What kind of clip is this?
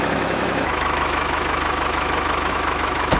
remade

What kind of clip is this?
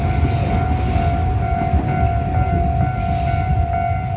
recorded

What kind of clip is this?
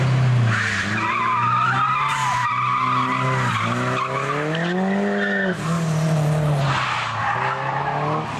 recorded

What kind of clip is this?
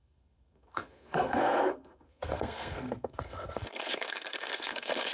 remade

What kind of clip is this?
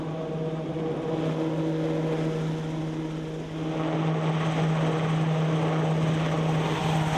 recorded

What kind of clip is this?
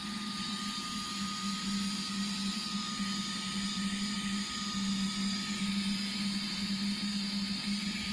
recorded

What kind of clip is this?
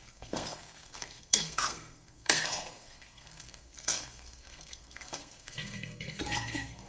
remade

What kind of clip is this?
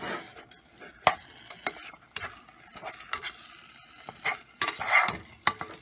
recorded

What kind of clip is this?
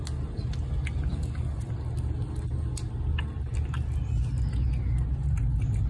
recorded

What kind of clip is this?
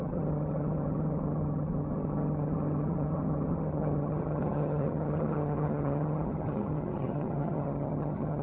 remade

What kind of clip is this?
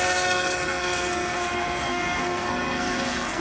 remade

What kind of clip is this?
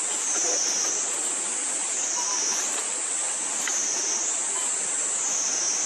recorded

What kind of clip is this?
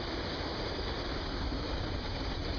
remade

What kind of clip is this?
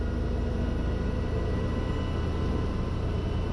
recorded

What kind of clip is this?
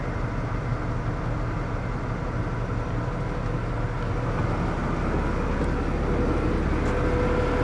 recorded